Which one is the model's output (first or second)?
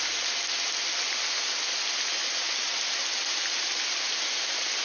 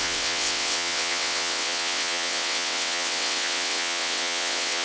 second